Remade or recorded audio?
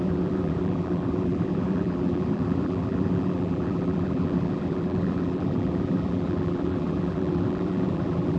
remade